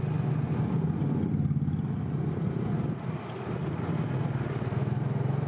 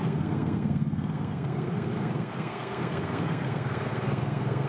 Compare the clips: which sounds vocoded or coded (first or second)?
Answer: second